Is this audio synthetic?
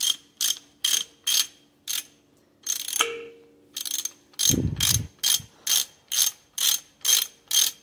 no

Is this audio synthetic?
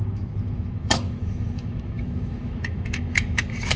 yes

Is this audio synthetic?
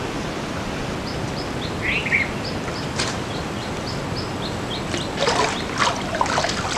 no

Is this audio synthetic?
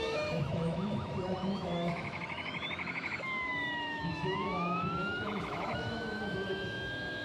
yes